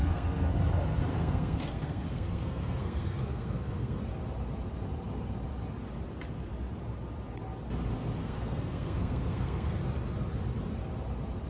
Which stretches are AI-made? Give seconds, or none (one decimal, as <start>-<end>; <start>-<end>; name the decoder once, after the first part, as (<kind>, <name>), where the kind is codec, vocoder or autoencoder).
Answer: 0.0-0.6 (codec, SNAC); 1.1-4.0; 8.2-9.8